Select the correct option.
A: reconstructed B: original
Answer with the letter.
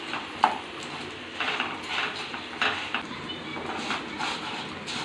B